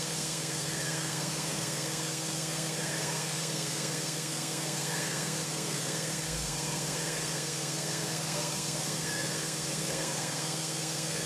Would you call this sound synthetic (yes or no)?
yes